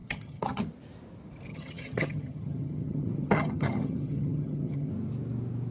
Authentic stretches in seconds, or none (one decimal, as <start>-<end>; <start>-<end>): 0.6-1.5; 4.9-5.7